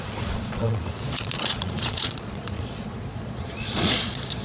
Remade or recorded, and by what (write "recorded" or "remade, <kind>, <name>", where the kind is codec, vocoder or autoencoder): remade, vocoder, Vocos